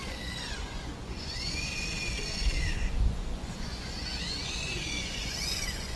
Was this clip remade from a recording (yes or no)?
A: yes